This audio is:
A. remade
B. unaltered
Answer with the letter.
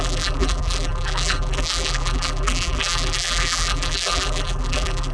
A